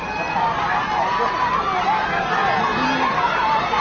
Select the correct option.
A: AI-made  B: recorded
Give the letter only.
B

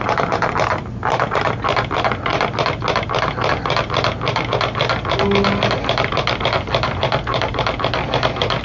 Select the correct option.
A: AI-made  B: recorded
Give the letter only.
B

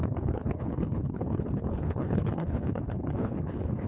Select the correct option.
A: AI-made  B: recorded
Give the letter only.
A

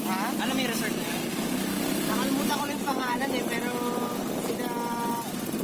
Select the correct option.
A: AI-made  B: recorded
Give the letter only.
B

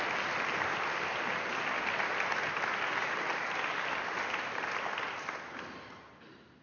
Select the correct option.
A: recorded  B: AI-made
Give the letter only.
A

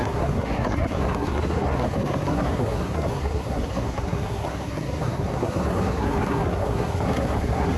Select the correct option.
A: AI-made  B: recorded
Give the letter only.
A